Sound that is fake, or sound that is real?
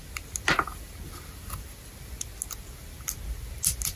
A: real